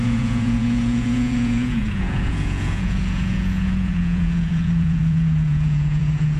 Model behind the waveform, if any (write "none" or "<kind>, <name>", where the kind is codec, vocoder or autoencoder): vocoder, Vocos